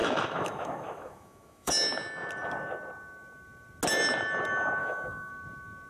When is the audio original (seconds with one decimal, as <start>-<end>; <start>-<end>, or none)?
1.7-4.8; 5.3-5.9